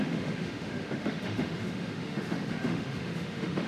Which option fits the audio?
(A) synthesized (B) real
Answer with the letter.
A